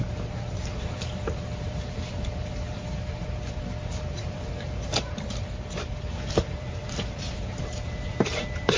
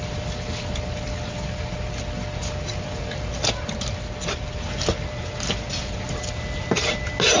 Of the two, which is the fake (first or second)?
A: first